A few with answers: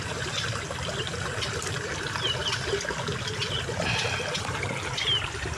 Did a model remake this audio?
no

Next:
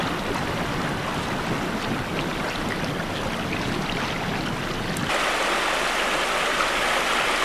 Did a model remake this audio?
no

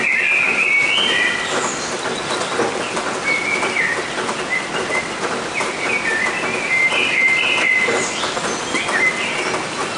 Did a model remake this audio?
no